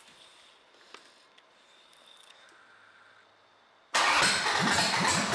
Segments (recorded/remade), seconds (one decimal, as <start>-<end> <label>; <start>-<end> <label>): 0.0-5.3 recorded